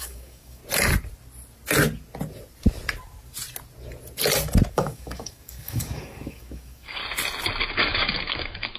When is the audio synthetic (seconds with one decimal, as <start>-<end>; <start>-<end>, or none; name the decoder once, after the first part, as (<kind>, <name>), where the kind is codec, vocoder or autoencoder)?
0.0-0.6 (codec, DAC); 4.7-7.0; 7.7-8.8